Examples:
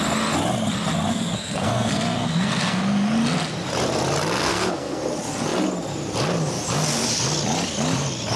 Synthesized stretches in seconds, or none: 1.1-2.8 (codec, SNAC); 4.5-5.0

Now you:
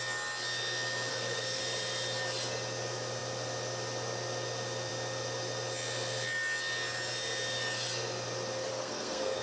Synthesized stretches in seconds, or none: 1.1-1.6 (codec, SNAC); 8.7-9.4